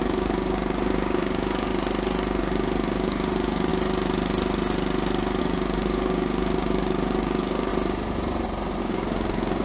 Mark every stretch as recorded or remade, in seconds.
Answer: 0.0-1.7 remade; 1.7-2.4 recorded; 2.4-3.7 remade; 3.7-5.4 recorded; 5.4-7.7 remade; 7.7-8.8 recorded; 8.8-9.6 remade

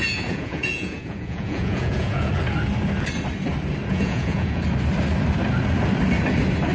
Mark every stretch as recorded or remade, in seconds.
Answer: 0.0-2.3 remade; 2.3-3.9 recorded; 3.9-4.6 remade; 4.6-6.7 recorded

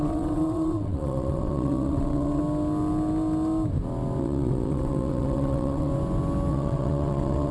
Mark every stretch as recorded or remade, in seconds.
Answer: 0.0-2.4 remade; 2.4-4.2 recorded; 4.2-5.9 remade; 5.9-6.5 recorded; 6.5-7.5 remade

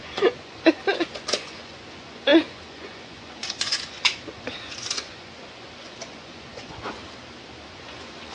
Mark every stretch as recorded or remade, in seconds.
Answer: 0.0-7.0 remade; 7.0-7.7 recorded; 7.7-8.3 remade

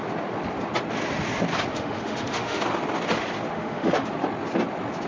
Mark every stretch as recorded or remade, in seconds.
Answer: 0.0-1.7 recorded; 1.7-2.6 remade; 2.6-3.5 recorded; 3.5-4.1 remade; 4.1-5.1 recorded

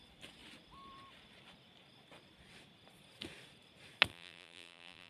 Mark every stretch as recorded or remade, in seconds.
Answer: 0.0-4.1 recorded; 4.1-5.1 remade